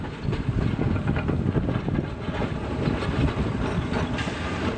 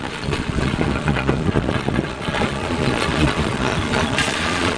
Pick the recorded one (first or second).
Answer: first